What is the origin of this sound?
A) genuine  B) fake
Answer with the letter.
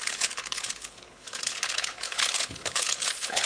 B